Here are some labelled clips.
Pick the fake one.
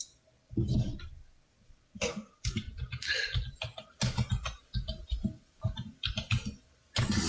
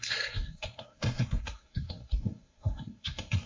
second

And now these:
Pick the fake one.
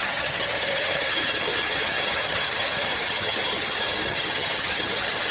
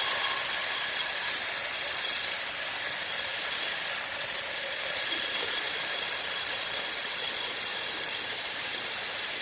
first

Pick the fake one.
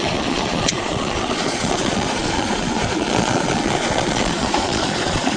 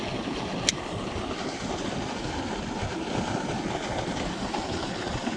first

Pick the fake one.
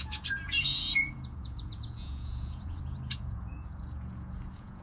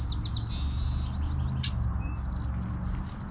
first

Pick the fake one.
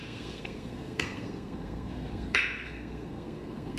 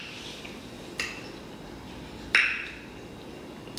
first